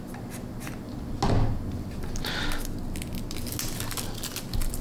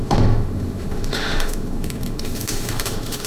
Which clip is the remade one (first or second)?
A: second